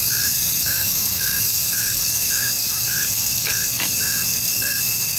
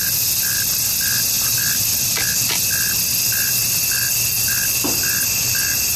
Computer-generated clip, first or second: first